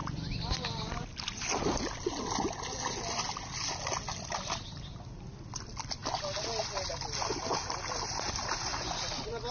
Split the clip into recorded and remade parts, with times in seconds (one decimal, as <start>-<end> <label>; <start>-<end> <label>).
0.0-9.5 recorded